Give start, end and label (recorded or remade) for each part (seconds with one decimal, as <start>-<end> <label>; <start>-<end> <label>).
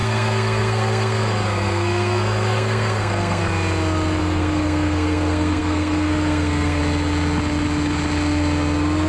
0.0-3.4 remade; 3.4-4.2 recorded; 4.2-6.8 remade; 6.8-9.1 recorded